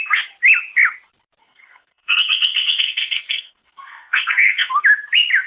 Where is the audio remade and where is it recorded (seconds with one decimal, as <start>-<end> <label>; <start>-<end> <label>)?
0.0-1.4 recorded; 1.4-4.7 remade; 4.7-5.5 recorded